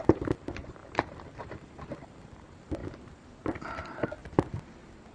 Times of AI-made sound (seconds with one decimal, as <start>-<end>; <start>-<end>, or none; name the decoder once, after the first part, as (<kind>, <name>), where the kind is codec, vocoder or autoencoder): 0.0-2.8 (vocoder, BigVGAN v2); 3.7-4.2